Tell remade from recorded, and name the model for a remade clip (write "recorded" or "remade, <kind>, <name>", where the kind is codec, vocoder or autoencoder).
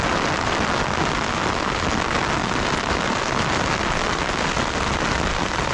recorded